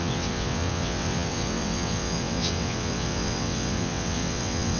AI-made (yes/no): yes